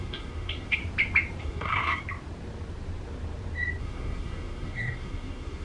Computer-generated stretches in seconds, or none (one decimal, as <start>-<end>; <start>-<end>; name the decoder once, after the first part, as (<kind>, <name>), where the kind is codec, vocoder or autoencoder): 0.0-0.8 (codec, SNAC); 1.4-2.0; 3.8-5.6